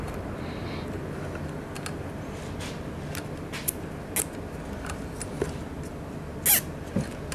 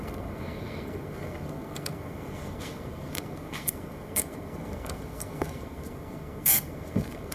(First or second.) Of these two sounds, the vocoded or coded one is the second